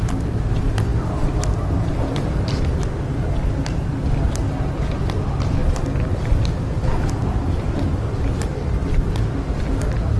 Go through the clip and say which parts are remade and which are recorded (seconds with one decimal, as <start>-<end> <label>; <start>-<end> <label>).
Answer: 0.0-10.2 recorded